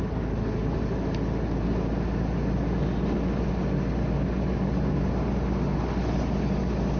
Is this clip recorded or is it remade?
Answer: recorded